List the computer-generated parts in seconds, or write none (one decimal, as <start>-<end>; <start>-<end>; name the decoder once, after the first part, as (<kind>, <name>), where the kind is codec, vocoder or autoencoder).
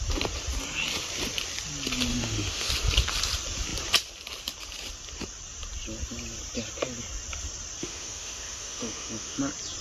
2.1-2.7 (autoencoder, DAC-VAE); 7.8-9.4